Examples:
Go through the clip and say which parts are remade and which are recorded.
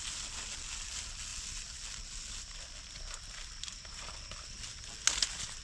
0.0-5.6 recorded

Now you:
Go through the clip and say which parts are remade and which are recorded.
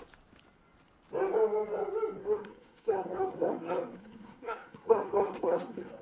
0.0-2.2 recorded; 2.2-6.0 remade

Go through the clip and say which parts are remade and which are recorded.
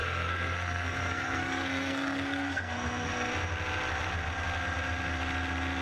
0.0-3.3 remade; 3.3-5.8 recorded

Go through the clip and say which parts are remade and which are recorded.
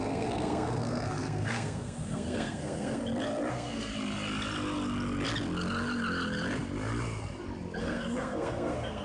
0.0-3.0 remade; 3.0-3.5 recorded; 3.5-3.9 remade; 3.9-7.8 recorded; 7.8-9.0 remade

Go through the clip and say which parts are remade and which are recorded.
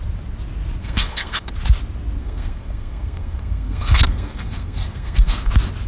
0.0-0.8 recorded; 0.8-1.5 remade; 1.5-2.2 recorded; 2.2-5.5 remade; 5.5-5.9 recorded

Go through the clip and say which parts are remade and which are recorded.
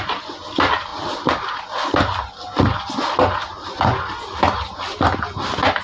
0.0-5.8 recorded